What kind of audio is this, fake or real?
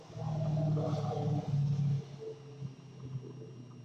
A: real